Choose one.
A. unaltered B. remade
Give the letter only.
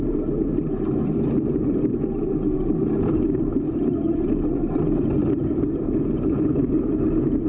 B